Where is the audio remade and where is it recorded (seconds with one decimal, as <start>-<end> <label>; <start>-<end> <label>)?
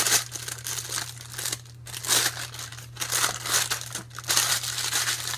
0.0-5.4 recorded